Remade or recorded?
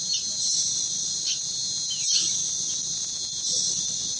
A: recorded